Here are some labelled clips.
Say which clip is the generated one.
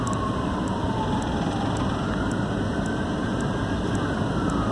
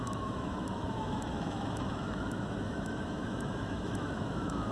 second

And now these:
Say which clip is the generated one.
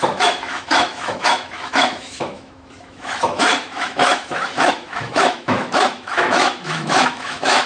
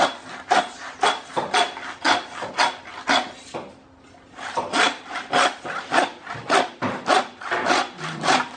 first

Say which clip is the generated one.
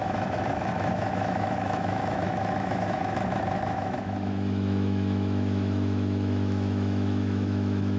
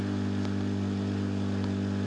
first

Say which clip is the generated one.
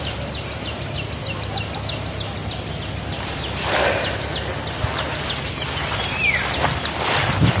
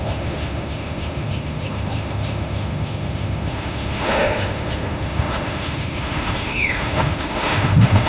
second